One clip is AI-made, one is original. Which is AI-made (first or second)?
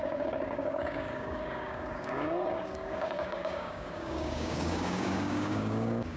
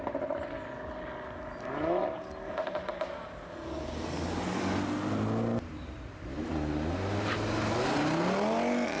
first